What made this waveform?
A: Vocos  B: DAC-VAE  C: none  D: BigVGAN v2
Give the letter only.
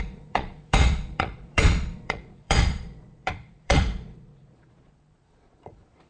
A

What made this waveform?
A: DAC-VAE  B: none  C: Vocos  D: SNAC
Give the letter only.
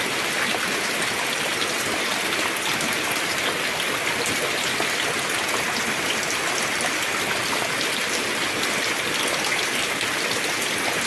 B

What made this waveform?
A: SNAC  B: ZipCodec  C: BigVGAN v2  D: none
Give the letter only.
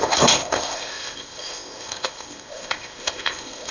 B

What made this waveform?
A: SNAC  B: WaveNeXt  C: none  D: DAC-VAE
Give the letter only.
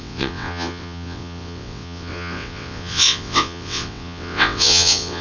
B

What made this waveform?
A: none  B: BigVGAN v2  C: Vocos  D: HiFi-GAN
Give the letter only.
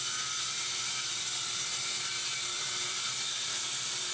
B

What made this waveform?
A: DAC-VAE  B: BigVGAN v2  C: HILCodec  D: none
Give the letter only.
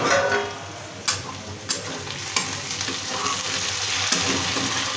D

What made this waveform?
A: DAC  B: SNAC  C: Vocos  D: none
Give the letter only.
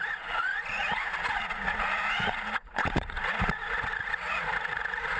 C